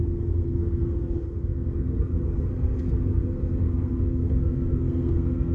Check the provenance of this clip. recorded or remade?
remade